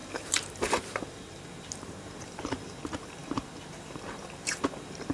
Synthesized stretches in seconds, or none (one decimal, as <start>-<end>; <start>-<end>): 0.0-2.8; 3.2-5.1